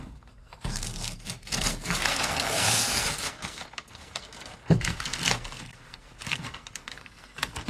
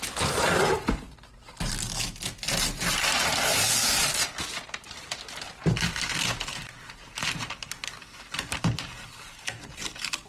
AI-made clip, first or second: first